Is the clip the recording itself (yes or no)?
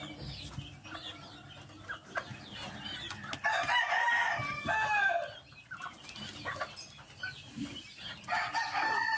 yes